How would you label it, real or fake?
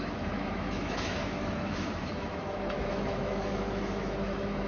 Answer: fake